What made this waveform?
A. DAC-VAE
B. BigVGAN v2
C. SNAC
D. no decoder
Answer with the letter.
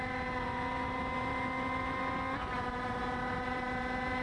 B